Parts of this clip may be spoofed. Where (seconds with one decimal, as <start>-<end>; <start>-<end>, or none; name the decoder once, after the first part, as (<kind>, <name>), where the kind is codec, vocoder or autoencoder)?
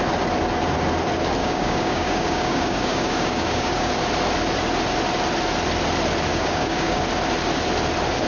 1.4-3.9 (codec, DAC); 6.3-7.0